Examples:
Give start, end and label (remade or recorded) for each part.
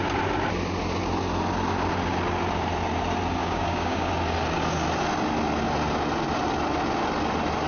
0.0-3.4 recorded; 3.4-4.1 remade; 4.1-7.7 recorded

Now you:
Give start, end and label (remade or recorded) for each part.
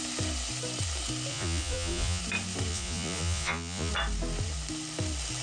0.0-1.3 recorded; 1.3-2.2 remade; 2.2-2.7 recorded; 2.7-3.9 remade; 3.9-5.4 recorded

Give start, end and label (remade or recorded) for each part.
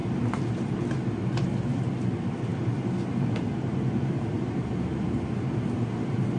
0.0-2.5 recorded; 2.5-6.4 remade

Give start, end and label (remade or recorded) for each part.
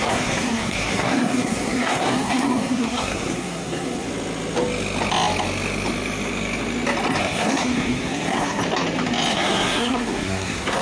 0.0-4.1 remade; 4.1-7.2 recorded; 7.2-8.6 remade; 8.6-9.3 recorded; 9.3-10.8 remade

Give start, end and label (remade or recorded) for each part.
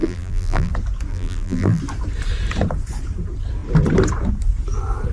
0.0-0.7 remade; 0.7-1.1 recorded; 1.1-1.8 remade; 1.8-5.1 recorded